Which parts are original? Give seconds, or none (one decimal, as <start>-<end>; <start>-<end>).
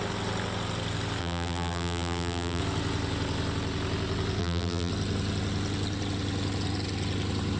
0.0-1.2; 2.6-4.4; 4.9-7.6